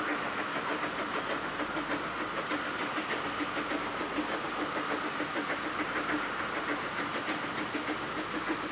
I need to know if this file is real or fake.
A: real